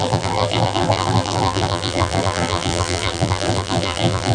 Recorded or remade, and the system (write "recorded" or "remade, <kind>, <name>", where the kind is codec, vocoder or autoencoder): remade, vocoder, BigVGAN v2